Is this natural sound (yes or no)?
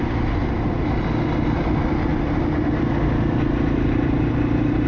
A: yes